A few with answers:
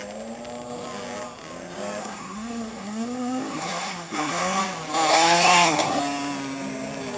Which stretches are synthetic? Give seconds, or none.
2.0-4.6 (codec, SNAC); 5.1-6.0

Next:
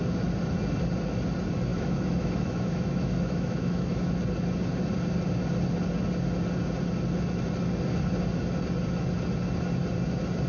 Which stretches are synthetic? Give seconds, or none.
1.7-4.1 (autoencoder, DAC-VAE)

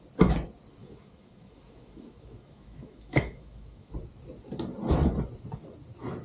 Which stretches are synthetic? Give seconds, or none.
0.8-3.9 (autoencoder, DAC-VAE)

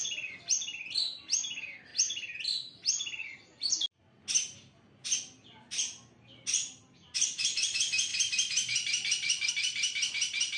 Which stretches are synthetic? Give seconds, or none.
8.1-9.5 (vocoder, BigVGAN v2)

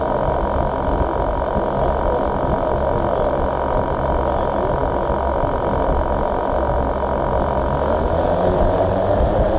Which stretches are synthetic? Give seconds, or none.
none